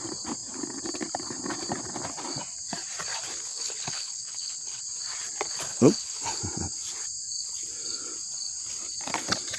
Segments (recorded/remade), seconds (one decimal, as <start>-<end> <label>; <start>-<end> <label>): 0.0-3.5 recorded; 3.5-4.8 remade; 4.8-5.7 recorded; 5.7-6.4 remade; 6.4-9.6 recorded